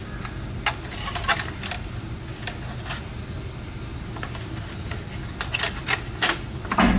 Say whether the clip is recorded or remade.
recorded